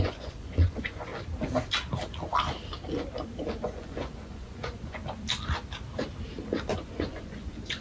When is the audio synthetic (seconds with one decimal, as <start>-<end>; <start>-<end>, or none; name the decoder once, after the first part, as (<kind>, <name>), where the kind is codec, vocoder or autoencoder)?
0.0-1.1 (vocoder, Vocos); 3.6-5.0; 6.7-7.8